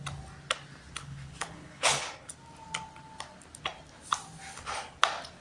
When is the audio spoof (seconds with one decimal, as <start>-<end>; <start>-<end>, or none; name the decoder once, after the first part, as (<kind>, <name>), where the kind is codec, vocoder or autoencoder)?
1.0-2.3 (codec, HILCodec)